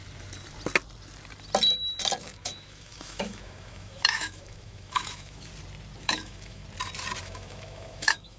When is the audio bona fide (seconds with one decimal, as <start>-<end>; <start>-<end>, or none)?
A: 0.0-2.2; 5.5-6.0; 6.6-7.2